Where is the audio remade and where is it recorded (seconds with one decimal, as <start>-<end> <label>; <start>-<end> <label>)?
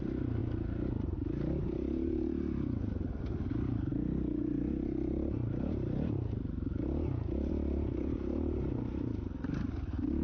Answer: 0.0-10.2 recorded